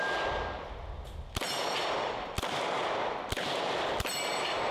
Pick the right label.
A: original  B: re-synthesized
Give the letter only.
A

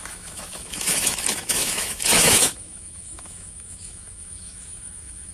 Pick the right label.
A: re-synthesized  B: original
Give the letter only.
A